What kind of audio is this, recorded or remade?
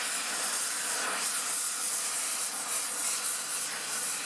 recorded